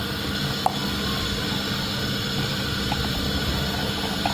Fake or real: real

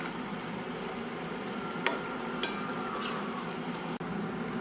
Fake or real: real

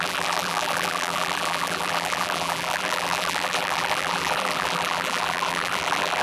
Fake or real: fake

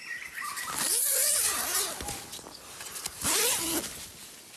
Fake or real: real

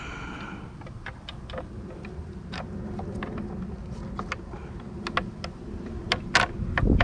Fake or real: real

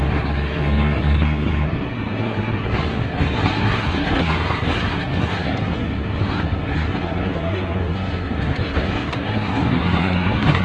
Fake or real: fake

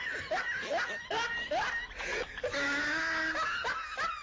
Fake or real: real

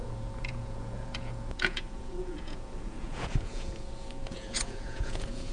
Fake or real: fake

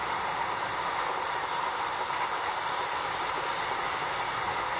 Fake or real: real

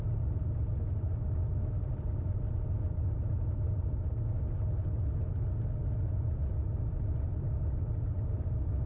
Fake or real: real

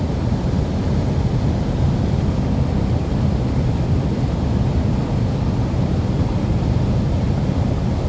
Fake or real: real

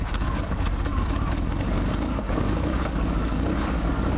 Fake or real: fake